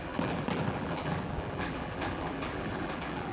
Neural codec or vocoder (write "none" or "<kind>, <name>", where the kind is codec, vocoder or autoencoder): vocoder, BigVGAN v2